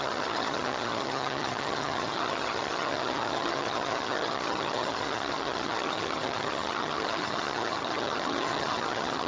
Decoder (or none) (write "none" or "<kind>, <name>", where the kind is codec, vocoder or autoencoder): vocoder, HiFi-GAN